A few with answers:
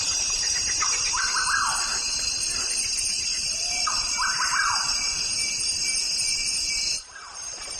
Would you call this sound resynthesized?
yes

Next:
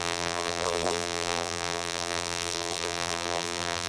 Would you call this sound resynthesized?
yes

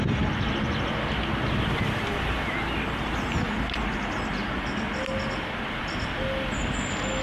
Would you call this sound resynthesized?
no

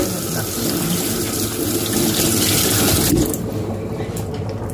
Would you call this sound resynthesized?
no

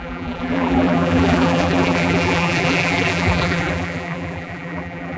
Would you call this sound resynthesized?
yes